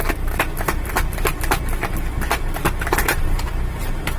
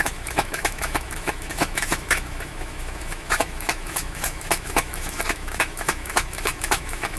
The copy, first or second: second